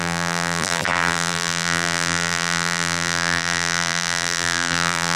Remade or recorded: remade